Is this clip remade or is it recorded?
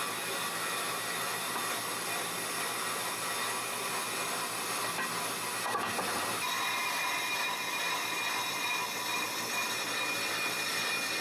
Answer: recorded